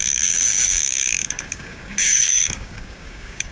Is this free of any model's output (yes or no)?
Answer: no